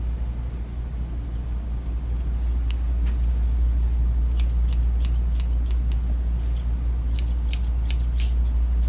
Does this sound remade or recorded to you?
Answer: recorded